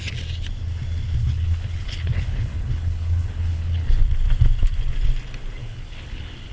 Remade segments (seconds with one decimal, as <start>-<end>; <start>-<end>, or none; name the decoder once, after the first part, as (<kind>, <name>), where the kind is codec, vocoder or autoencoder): 1.2-4.0 (codec, HILCodec); 5.6-6.5

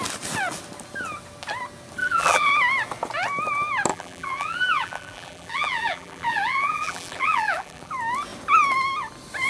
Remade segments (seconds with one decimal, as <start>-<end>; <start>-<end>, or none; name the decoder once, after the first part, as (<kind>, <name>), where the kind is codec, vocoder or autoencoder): 2.0-2.5 (vocoder, BigVGAN v2); 3.9-7.9

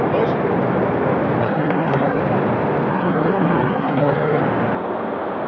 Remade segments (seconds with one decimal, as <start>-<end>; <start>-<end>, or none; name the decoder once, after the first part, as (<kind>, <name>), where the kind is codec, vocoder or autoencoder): 1.4-2.2 (codec, SNAC); 2.9-4.4